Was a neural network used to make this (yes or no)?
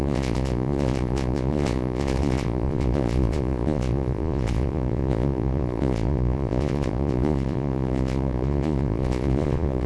yes